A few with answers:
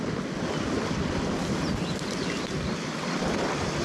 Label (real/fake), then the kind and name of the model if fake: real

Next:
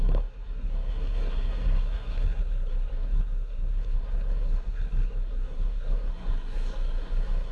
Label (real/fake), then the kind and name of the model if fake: fake, codec, SNAC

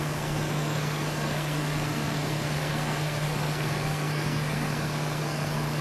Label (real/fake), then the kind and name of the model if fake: fake, codec, SNAC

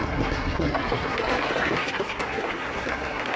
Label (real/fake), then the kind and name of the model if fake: fake, codec, SNAC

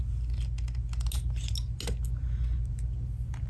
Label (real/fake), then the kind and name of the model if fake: real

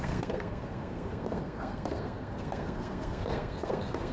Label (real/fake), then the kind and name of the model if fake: fake, codec, SNAC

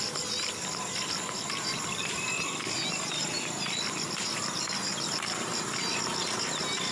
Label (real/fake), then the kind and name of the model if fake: real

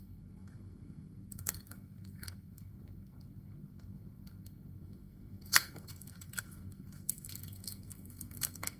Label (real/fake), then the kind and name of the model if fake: fake, codec, SNAC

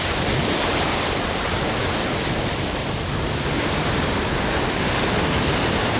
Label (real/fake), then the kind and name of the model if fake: real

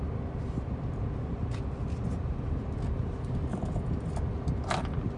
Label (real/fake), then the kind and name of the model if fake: real